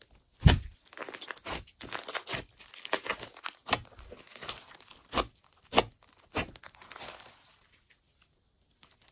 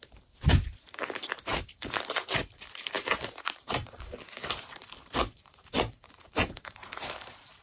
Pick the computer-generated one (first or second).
second